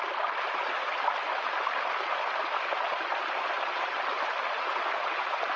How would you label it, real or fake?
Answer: real